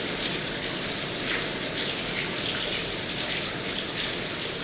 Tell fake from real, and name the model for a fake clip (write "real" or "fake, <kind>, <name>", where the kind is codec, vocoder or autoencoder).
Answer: real